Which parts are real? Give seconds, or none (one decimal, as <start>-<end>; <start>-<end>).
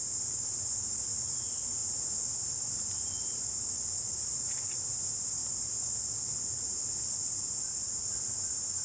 0.0-8.8